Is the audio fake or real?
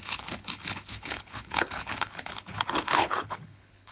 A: fake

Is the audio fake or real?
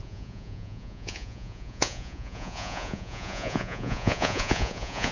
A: fake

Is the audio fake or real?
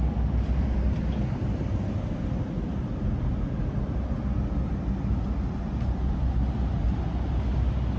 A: real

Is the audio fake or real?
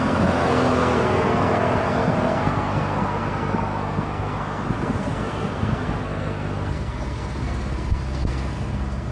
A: fake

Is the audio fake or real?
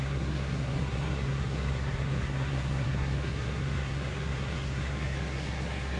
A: fake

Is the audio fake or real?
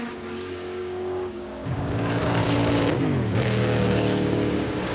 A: fake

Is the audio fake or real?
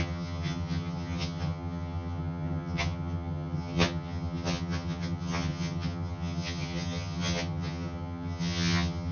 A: fake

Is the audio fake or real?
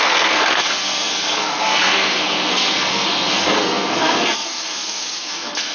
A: fake